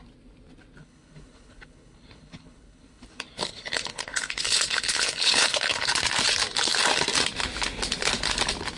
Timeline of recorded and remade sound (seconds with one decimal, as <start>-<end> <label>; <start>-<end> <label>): 0.0-0.8 recorded; 0.8-5.9 remade; 5.9-8.8 recorded